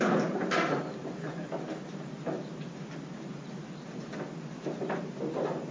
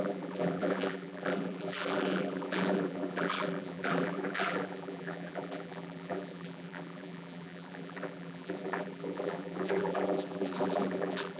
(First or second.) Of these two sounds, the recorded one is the first